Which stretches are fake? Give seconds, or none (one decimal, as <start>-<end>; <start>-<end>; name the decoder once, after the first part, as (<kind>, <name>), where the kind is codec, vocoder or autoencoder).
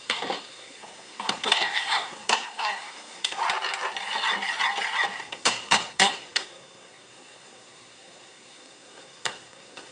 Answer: 0.0-3.4 (codec, SNAC); 5.2-9.9